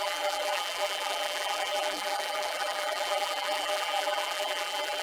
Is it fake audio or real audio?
fake